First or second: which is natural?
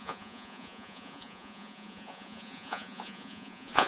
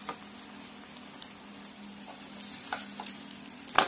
second